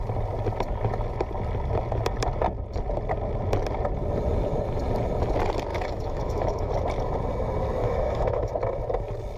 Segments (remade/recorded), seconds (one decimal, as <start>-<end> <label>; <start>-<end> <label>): 0.0-5.7 recorded; 5.7-6.7 remade; 6.7-7.8 recorded; 7.8-8.5 remade; 8.5-9.4 recorded